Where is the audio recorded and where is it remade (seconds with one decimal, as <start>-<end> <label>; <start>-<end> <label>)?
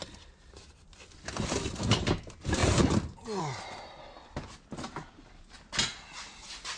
0.0-6.8 recorded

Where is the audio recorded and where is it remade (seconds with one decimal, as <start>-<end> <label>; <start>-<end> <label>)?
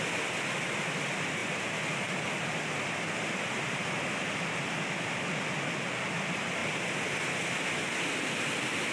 0.0-8.9 recorded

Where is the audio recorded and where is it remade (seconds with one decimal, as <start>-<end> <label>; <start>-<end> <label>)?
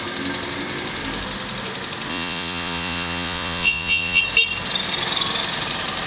0.0-2.1 recorded; 2.1-4.2 remade; 4.2-6.1 recorded